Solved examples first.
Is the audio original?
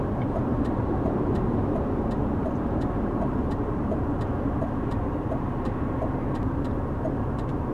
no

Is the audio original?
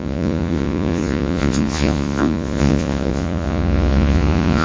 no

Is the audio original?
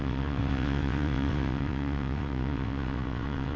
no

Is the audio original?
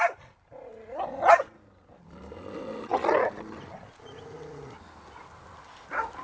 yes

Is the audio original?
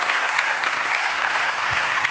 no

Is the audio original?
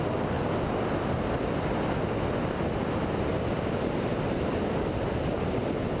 yes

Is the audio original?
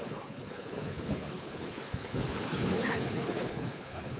no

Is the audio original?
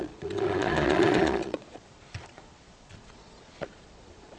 no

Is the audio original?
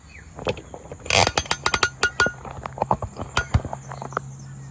yes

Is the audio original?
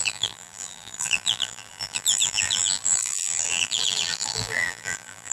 no